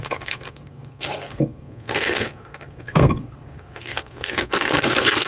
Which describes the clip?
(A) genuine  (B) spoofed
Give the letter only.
B